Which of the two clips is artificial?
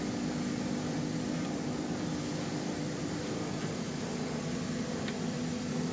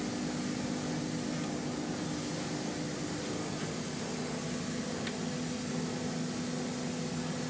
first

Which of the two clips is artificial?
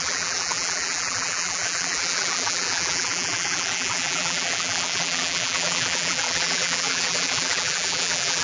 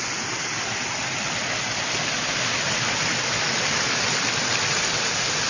first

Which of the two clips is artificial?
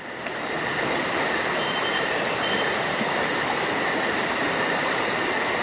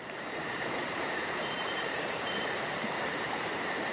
second